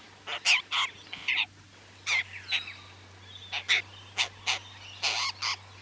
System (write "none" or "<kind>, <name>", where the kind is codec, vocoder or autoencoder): none